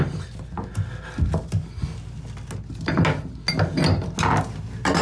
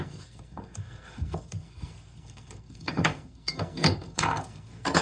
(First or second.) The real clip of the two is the first